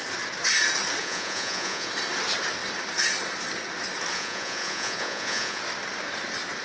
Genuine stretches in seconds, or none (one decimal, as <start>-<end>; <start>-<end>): 0.0-1.0; 1.9-4.1; 5.6-6.6